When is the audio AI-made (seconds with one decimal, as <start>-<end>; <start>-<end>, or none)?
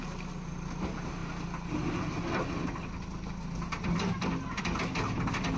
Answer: none